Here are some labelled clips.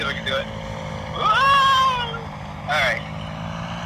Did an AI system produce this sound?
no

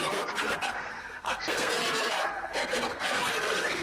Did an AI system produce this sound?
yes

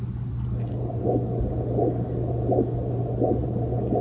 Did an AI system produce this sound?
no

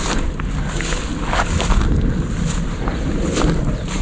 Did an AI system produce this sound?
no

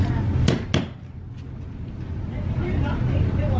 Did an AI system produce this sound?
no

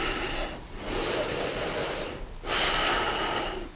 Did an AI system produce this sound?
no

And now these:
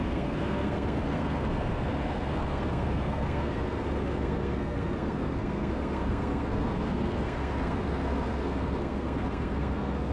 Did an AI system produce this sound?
yes